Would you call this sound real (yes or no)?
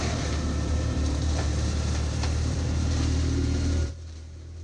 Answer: no